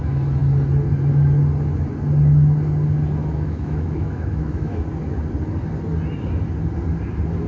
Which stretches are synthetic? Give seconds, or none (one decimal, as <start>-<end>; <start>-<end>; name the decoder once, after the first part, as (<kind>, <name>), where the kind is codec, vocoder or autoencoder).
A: 3.2-4.8 (autoencoder, DAC-VAE)